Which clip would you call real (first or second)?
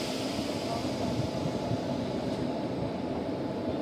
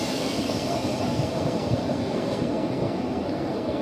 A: first